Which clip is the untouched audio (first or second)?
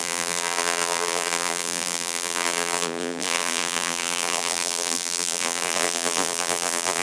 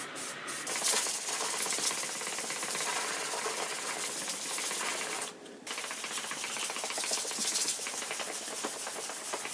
second